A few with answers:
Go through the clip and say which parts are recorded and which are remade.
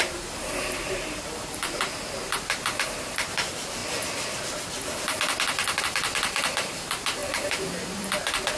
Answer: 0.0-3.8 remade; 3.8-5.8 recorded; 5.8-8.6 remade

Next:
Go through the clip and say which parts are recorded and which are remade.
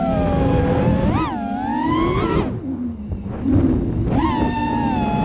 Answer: 0.0-5.2 recorded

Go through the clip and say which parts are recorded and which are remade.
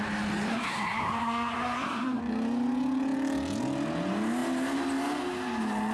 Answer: 0.0-0.5 recorded; 0.5-2.2 remade; 2.2-5.9 recorded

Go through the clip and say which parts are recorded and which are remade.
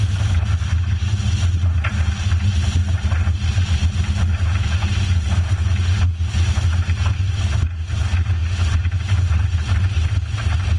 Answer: 0.0-10.8 recorded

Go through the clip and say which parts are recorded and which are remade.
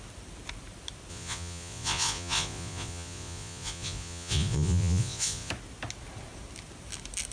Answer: 0.0-1.1 recorded; 1.1-5.5 remade; 5.5-7.3 recorded